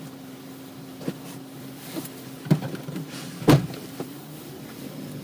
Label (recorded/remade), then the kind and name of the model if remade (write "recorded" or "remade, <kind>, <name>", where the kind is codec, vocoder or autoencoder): remade, vocoder, BigVGAN v2